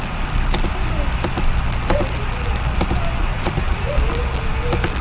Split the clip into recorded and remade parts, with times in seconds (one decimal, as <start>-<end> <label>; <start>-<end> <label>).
0.0-3.2 recorded; 3.2-3.9 remade; 3.9-5.0 recorded